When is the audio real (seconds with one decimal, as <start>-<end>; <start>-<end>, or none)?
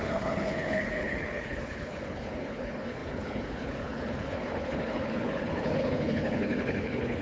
none